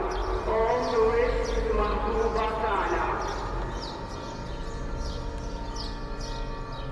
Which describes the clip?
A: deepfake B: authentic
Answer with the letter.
B